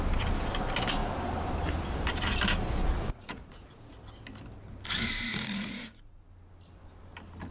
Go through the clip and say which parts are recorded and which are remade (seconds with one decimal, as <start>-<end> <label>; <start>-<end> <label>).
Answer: 0.0-2.8 recorded; 2.8-3.9 remade; 3.9-5.3 recorded; 5.3-6.2 remade; 6.2-7.5 recorded